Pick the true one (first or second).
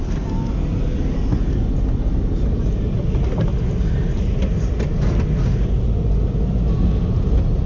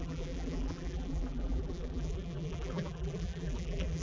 first